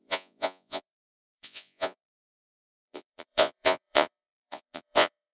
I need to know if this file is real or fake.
fake